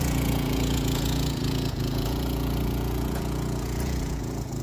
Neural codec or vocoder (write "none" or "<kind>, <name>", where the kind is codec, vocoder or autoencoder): vocoder, Vocos